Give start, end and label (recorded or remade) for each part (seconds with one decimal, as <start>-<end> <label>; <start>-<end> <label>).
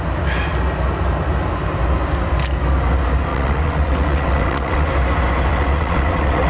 0.0-3.3 recorded; 3.3-4.9 remade; 4.9-5.5 recorded; 5.5-6.5 remade